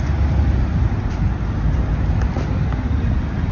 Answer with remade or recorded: recorded